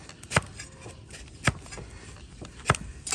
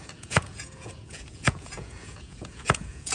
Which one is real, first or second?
first